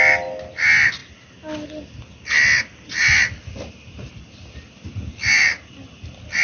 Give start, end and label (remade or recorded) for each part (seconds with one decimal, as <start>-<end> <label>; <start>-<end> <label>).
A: 0.0-1.0 recorded; 1.0-2.2 remade; 2.2-3.0 recorded; 3.0-4.9 remade; 4.9-6.4 recorded